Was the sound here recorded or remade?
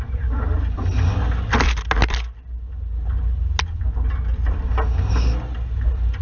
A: recorded